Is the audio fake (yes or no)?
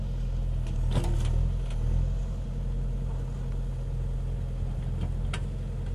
no